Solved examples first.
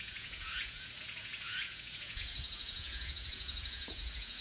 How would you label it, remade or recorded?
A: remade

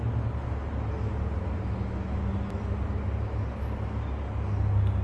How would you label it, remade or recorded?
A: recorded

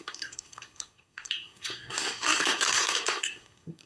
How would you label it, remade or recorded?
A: remade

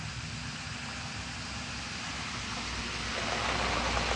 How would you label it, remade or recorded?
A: recorded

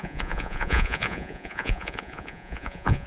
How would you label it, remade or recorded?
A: remade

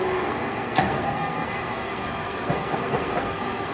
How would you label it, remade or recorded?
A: remade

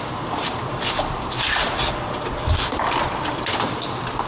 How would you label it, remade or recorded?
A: remade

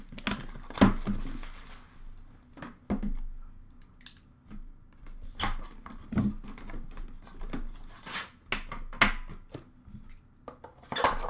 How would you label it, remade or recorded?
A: recorded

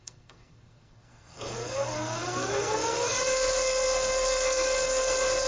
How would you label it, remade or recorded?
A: remade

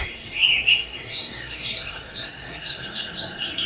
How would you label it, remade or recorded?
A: remade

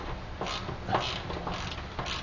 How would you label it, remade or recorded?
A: recorded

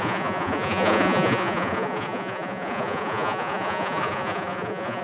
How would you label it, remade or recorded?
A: remade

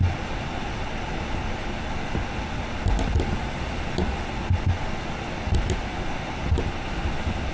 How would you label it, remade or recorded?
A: recorded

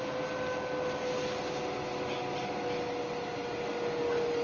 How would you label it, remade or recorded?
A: recorded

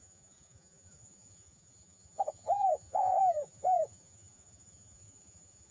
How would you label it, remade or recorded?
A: remade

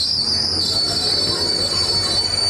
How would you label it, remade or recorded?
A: recorded